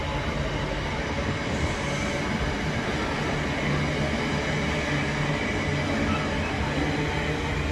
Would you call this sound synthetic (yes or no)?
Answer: no